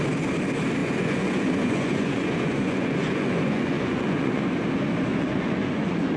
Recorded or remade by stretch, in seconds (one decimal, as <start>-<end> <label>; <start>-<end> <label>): 0.0-0.8 recorded; 0.8-4.5 remade; 4.5-5.1 recorded; 5.1-6.2 remade